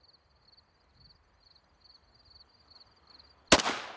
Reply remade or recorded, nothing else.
recorded